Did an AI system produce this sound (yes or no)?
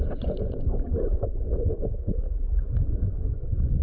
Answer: yes